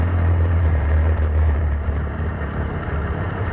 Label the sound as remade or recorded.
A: remade